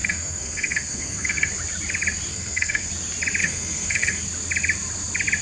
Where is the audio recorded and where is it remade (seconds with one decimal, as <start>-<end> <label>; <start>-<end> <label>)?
0.0-1.5 remade; 1.5-2.3 recorded; 2.3-2.9 remade; 2.9-3.4 recorded; 3.4-4.2 remade; 4.2-5.4 recorded